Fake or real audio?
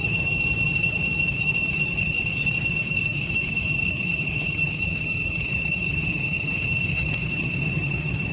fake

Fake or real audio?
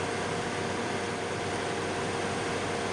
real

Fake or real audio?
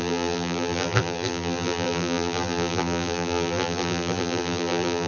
fake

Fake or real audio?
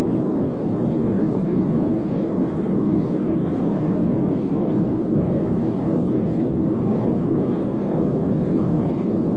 fake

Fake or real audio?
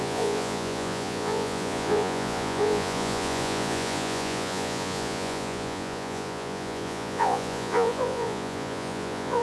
fake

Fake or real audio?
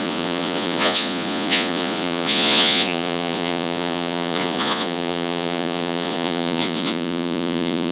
fake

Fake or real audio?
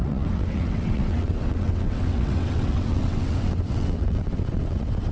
fake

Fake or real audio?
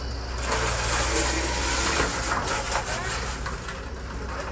real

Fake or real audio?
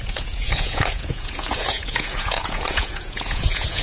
fake